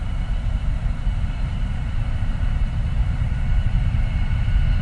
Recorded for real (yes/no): no